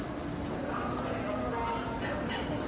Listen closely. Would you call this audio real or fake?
real